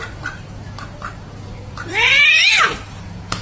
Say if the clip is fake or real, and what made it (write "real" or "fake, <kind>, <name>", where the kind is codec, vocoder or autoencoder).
real